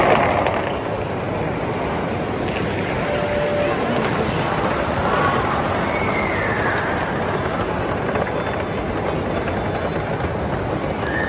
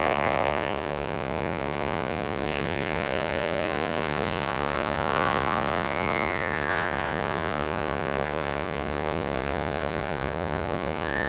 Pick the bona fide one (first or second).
first